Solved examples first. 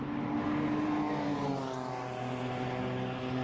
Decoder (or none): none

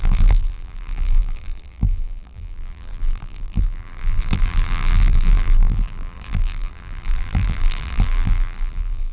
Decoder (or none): vocoder, BigVGAN v2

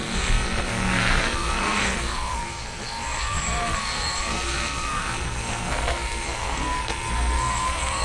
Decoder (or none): codec, SNAC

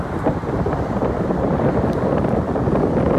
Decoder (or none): none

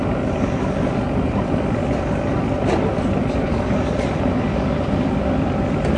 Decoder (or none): none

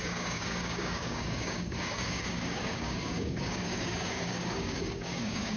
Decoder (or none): codec, DAC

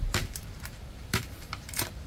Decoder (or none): vocoder, BigVGAN v2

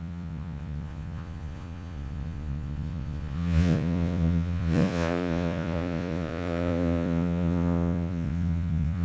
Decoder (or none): vocoder, Vocos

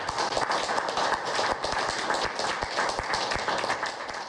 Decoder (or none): none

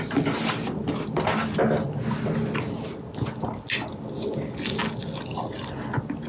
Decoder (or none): none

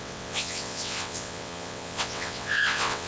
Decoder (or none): vocoder, WaveNeXt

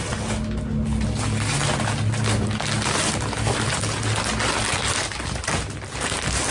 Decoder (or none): none